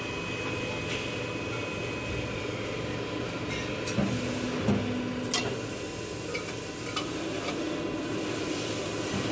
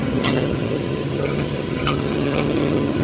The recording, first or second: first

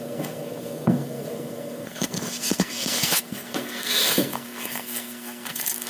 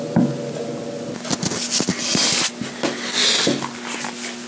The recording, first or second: second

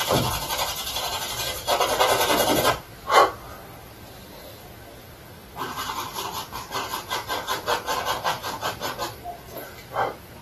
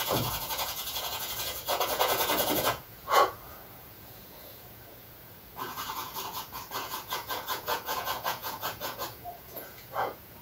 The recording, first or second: first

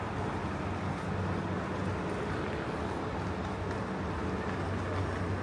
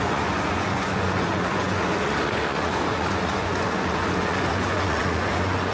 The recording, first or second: first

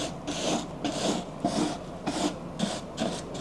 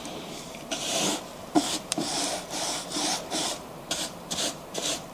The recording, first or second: first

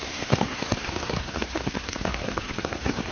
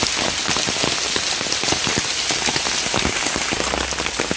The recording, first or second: second